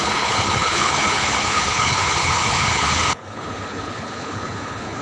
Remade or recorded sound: remade